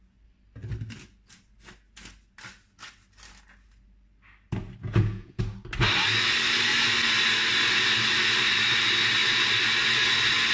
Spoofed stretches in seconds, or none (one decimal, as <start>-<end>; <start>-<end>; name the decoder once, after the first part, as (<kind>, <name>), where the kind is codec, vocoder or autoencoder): 4.8-5.4 (vocoder, Vocos)

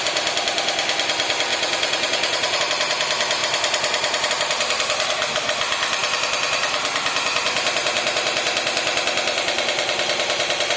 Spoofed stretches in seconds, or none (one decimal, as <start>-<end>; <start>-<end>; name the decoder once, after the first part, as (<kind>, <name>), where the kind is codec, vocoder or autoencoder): 1.5-2.6 (vocoder, Vocos)

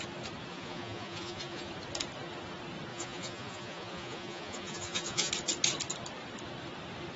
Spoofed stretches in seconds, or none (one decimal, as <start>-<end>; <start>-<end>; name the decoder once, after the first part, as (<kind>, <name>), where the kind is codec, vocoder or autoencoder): 0.5-1.7 (vocoder, Vocos); 2.9-5.3

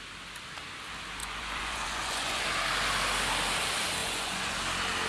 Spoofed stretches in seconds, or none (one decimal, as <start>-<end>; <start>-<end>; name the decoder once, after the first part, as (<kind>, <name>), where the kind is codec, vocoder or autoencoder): 1.2-2.4 (vocoder, Vocos); 4.0-4.6

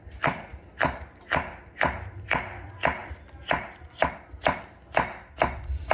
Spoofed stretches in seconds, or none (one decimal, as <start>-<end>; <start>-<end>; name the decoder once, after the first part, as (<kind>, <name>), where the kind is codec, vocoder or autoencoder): none

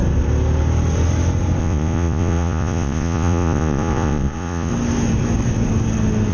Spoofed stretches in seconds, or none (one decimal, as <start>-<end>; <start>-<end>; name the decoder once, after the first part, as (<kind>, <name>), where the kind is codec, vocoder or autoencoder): 1.6-4.7 (vocoder, Vocos)

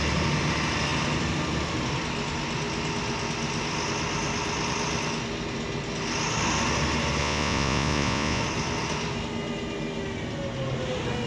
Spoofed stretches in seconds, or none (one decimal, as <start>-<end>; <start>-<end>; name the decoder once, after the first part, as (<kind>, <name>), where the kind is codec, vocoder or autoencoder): 7.2-8.4 (vocoder, Vocos)